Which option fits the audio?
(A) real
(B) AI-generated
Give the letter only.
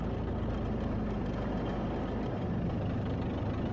A